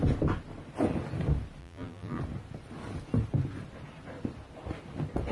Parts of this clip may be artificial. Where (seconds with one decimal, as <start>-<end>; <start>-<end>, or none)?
1.6-2.2